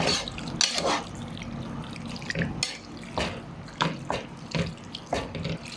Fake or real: real